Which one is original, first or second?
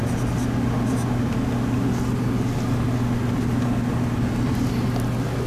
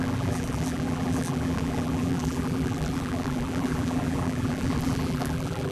first